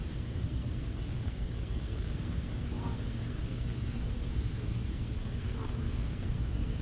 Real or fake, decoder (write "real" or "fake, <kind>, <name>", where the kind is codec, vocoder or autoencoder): fake, codec, SNAC